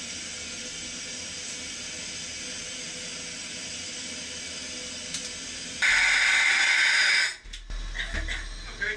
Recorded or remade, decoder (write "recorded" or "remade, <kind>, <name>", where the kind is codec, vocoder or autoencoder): recorded